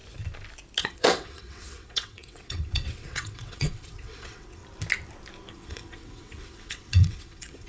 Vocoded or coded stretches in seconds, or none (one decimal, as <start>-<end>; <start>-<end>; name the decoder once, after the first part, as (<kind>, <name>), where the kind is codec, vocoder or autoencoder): 0.8-4.6 (vocoder, WaveNeXt); 5.5-7.7

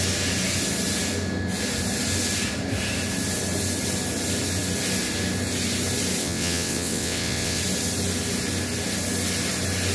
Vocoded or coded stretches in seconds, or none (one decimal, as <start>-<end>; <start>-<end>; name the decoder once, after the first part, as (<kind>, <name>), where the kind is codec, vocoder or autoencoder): 6.2-7.6 (vocoder, WaveNeXt)

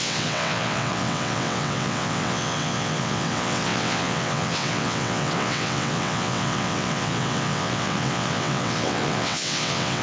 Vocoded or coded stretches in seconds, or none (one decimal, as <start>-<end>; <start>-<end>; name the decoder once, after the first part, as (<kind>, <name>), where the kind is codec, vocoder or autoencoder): 0.0-10.0 (vocoder, WaveNeXt)

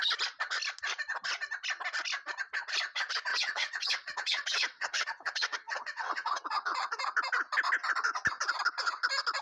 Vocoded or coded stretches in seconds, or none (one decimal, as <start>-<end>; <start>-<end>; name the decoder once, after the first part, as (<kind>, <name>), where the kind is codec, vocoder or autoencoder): 3.3-7.0 (vocoder, WaveNeXt)

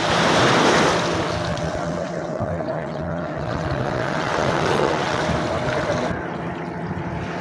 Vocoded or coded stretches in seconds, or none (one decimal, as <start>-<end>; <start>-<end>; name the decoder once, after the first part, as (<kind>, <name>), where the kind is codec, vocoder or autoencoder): 1.5-5.2 (vocoder, WaveNeXt)